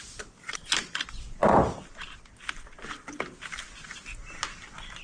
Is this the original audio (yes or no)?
yes